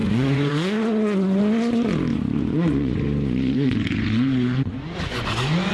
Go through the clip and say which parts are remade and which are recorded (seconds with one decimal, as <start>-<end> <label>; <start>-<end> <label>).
0.0-1.4 remade; 1.4-2.1 recorded; 2.1-5.3 remade; 5.3-5.7 recorded